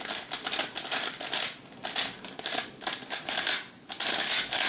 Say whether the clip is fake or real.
real